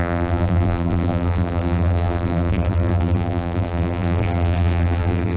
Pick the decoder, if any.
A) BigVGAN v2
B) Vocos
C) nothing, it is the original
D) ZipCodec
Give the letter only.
A